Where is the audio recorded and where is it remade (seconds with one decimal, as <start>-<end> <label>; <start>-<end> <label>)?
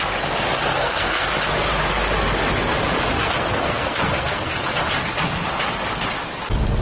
0.0-0.7 recorded; 0.7-1.3 remade; 1.3-3.2 recorded; 3.2-4.7 remade; 4.7-6.8 recorded